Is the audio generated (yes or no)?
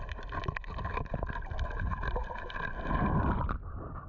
no